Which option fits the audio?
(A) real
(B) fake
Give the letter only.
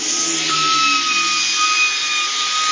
A